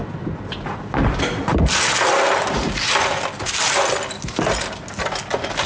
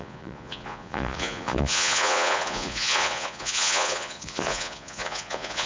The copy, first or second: second